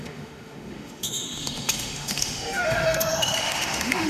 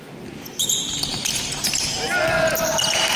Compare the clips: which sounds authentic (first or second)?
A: second